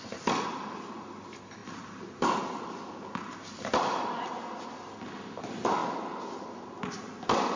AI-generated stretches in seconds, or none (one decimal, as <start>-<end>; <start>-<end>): none